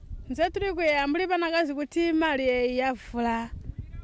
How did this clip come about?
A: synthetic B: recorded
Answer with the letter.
B